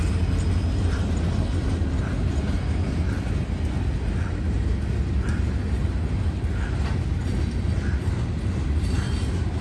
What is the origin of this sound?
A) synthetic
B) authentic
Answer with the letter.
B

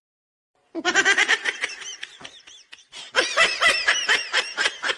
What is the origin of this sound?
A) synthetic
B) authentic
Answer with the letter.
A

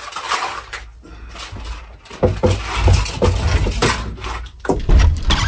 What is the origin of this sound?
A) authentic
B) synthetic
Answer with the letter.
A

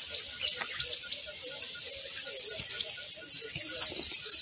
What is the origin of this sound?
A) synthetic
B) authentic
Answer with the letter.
B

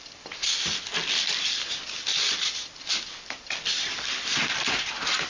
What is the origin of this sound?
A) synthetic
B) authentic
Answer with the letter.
A